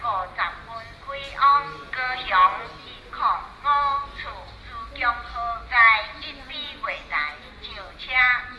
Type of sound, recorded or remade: recorded